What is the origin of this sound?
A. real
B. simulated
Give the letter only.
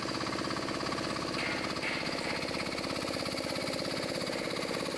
A